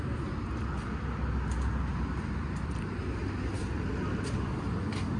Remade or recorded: recorded